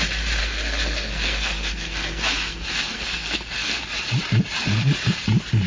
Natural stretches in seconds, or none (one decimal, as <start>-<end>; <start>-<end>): 0.0-0.4; 3.8-5.7